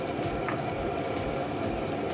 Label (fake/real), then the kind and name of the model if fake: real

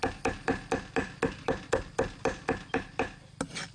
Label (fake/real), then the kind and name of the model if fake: real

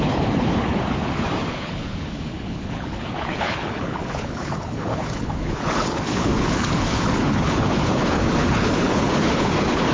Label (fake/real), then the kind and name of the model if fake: fake, codec, HILCodec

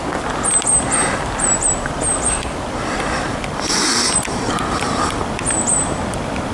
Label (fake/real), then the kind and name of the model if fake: real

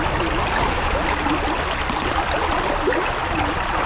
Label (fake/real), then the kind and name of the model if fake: real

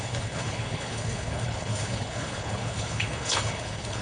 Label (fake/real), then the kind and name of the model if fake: fake, codec, HILCodec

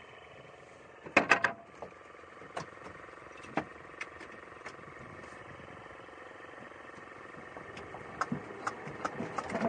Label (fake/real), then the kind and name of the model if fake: real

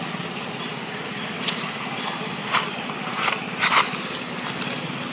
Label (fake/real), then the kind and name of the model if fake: real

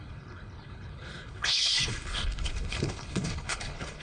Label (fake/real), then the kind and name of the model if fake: fake, codec, HILCodec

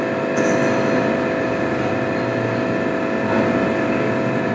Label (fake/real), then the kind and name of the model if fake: real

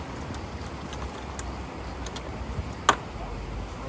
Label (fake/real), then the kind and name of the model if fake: real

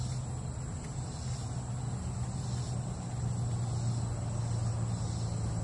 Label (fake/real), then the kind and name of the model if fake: real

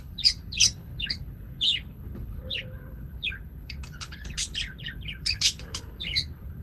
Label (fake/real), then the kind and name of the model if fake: fake, codec, HILCodec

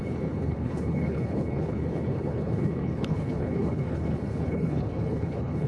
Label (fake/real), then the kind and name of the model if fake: fake, codec, HILCodec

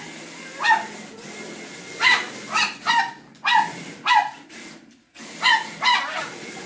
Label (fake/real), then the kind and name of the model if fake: real